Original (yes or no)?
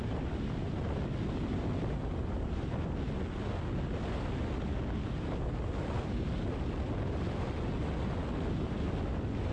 yes